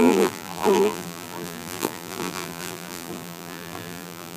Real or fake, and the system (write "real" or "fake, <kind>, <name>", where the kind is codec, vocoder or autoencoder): fake, vocoder, BigVGAN v2